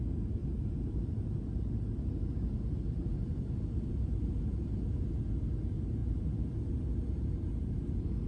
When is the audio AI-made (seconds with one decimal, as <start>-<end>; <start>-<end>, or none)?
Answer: 0.4-4.7; 6.0-6.7